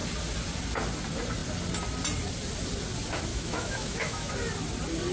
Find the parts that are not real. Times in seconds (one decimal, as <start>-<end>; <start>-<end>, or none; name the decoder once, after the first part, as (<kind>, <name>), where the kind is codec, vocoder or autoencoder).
3.3-4.3 (autoencoder, DAC-VAE)